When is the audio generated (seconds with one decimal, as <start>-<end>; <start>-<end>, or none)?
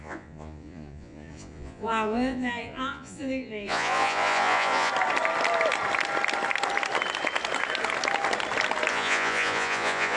0.0-4.9; 8.9-10.2